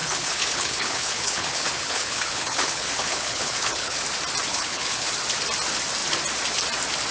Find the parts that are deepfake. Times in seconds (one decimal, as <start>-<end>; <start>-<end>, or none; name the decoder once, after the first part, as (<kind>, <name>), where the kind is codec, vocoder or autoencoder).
0.0-4.0 (codec, HILCodec); 4.5-5.1